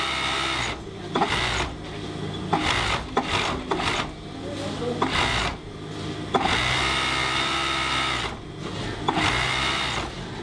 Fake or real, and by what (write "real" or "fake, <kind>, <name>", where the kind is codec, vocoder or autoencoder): real